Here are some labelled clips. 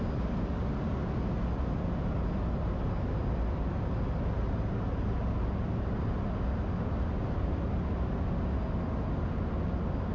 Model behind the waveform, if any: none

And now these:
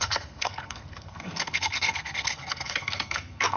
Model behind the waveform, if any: codec, SNAC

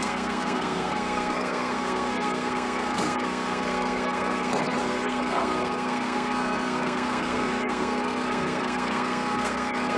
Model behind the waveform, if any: codec, SNAC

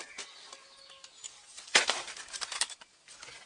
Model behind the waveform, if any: none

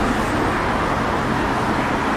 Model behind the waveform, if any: none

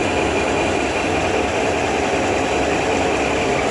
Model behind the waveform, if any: none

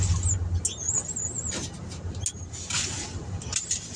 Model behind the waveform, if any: none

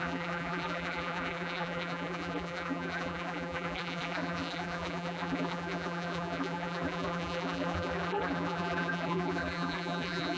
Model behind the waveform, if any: vocoder, BigVGAN v2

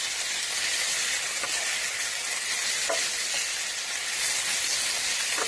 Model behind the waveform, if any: none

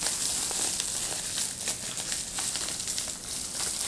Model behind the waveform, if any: none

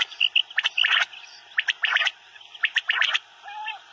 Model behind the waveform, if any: none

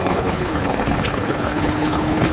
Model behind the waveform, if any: codec, HILCodec